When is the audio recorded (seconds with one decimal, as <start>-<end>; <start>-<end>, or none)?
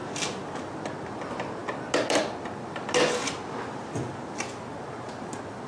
0.0-5.7